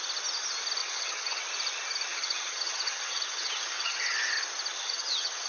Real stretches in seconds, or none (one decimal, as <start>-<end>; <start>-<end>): 0.0-0.8; 1.4-2.1; 4.3-4.7